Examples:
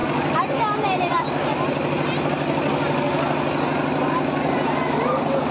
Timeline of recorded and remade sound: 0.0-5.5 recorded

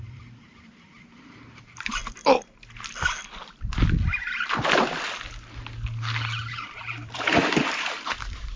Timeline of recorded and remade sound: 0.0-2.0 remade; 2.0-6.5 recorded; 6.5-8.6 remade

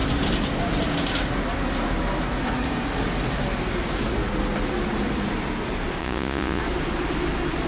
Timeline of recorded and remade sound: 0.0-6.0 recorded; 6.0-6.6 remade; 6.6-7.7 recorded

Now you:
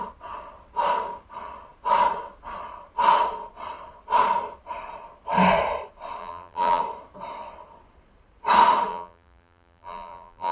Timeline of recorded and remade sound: 0.0-6.2 recorded; 6.2-6.8 remade; 6.8-8.9 recorded; 8.9-10.5 remade

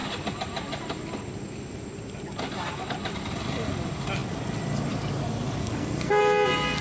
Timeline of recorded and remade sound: 0.0-5.6 recorded; 5.6-6.2 remade; 6.2-6.8 recorded